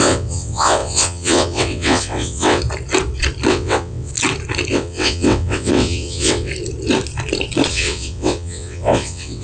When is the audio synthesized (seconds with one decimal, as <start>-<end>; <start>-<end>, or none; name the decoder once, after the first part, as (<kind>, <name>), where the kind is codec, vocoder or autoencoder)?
0.0-2.6 (vocoder, WaveNeXt); 3.5-4.1; 4.7-6.5; 7.7-9.4